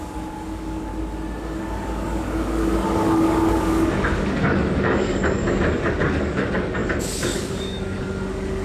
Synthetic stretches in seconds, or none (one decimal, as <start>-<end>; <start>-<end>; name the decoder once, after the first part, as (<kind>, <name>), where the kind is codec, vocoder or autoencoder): 0.0-0.9 (codec, DAC); 1.4-8.6